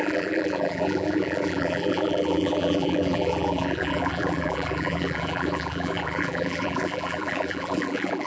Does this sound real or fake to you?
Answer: fake